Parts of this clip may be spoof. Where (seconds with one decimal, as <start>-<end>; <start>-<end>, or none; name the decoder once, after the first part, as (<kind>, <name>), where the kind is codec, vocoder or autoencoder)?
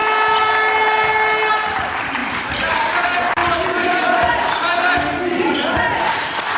5.3-6.6 (vocoder, Vocos)